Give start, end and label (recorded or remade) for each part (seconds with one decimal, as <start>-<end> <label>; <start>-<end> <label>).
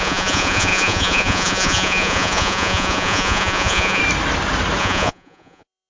0.0-4.0 remade; 4.0-4.8 recorded; 4.8-5.9 remade